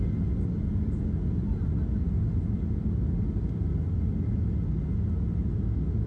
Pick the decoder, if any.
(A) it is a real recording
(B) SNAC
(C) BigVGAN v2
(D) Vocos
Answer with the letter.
A